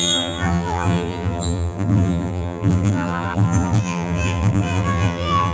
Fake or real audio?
fake